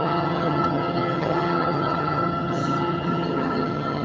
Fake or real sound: fake